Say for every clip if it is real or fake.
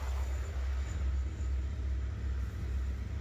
real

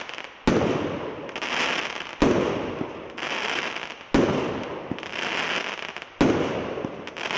real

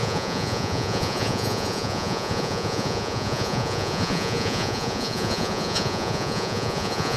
fake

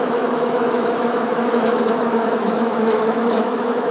fake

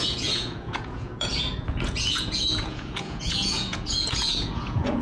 fake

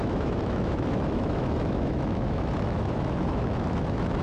fake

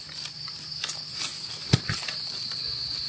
real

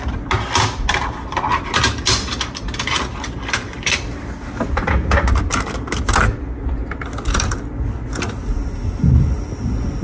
real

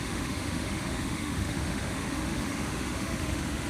fake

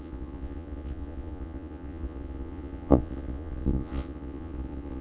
fake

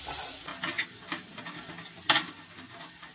real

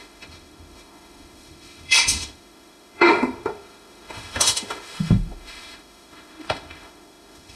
fake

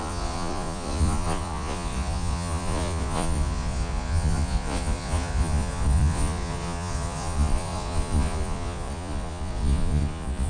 fake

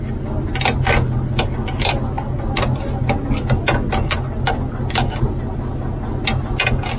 real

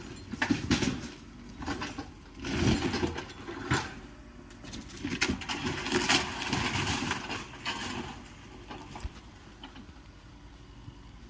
real